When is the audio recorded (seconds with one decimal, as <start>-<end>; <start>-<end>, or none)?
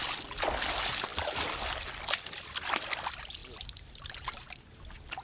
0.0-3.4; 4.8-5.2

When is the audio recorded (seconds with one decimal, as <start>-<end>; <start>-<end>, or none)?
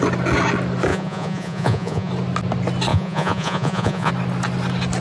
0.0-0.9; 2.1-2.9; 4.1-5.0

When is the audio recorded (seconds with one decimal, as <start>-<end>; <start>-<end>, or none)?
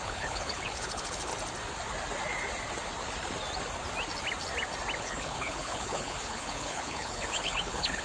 1.3-5.0